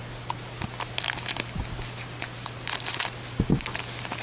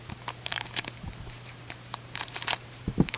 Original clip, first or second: first